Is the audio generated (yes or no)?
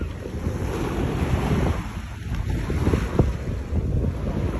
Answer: no